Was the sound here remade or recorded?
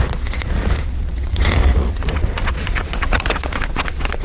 remade